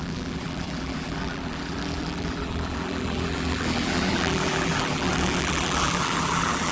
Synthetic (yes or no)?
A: yes